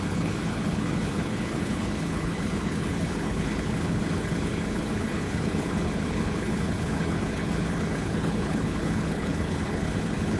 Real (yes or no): no